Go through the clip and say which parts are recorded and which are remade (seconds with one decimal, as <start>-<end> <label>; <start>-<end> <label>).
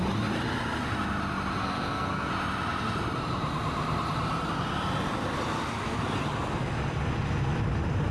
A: 0.0-1.6 recorded; 1.6-2.3 remade; 2.3-8.1 recorded